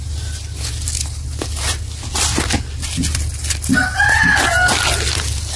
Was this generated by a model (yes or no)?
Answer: no